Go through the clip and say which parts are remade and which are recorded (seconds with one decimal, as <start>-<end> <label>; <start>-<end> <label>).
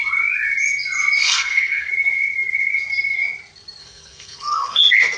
0.0-1.2 recorded; 1.2-1.9 remade; 1.9-3.8 recorded; 3.8-4.8 remade; 4.8-5.2 recorded